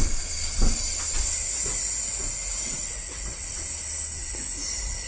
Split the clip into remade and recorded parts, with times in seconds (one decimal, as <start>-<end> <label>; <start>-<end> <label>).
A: 0.0-1.4 recorded; 1.4-3.5 remade; 3.5-4.2 recorded; 4.2-5.1 remade